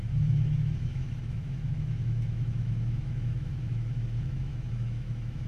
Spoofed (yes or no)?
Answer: yes